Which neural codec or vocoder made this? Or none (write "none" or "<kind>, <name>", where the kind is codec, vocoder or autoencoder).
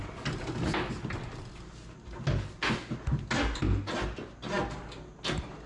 none